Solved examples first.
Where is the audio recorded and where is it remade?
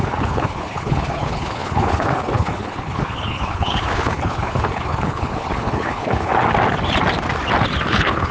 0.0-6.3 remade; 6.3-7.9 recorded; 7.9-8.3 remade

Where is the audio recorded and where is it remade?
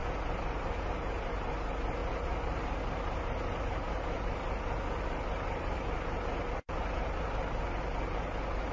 0.0-8.7 recorded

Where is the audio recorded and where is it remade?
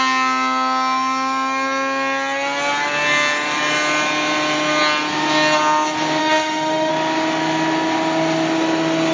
0.0-6.2 recorded; 6.2-6.9 remade; 6.9-9.1 recorded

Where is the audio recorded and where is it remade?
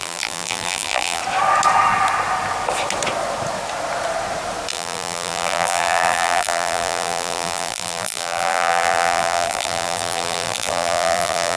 0.0-1.2 remade; 1.2-4.7 recorded; 4.7-11.6 remade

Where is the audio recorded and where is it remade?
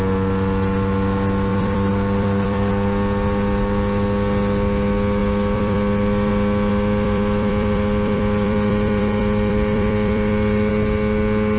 0.0-1.5 recorded; 1.5-2.7 remade; 2.7-5.2 recorded; 5.2-6.3 remade; 6.3-6.7 recorded; 6.7-10.7 remade; 10.7-11.6 recorded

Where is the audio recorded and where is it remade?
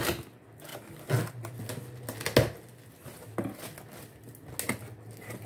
0.0-5.5 recorded